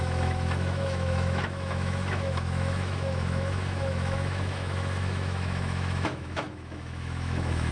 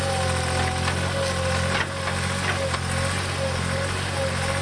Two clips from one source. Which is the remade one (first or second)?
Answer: first